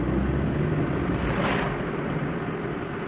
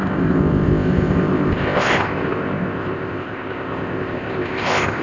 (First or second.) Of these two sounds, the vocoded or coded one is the second